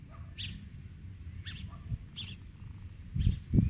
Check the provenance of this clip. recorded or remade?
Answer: recorded